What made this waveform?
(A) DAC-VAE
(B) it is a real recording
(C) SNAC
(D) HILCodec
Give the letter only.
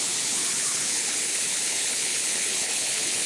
D